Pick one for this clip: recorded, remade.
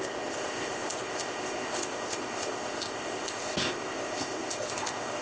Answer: remade